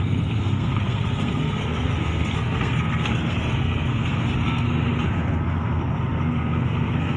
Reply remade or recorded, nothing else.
remade